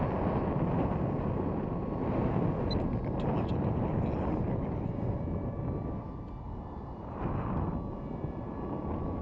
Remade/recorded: recorded